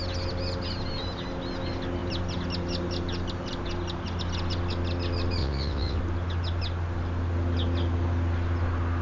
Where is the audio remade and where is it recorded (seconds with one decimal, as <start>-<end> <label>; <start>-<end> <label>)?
0.0-5.4 recorded; 5.4-6.0 remade; 6.0-9.0 recorded